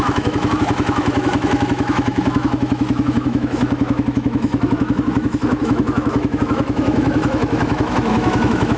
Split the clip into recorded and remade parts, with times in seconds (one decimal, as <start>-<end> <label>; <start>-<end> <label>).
0.0-8.8 remade